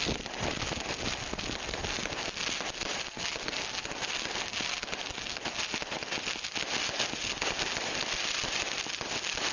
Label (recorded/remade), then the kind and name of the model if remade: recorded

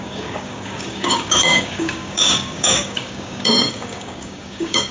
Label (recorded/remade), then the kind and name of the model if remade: remade, codec, DAC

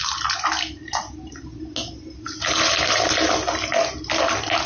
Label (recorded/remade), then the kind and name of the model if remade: recorded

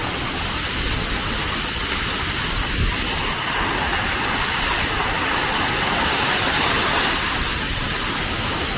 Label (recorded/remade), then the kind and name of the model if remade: recorded